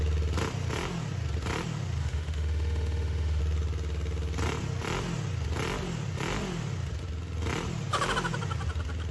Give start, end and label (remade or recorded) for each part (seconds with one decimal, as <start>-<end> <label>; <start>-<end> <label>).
0.0-2.0 recorded; 2.0-3.4 remade; 3.4-9.1 recorded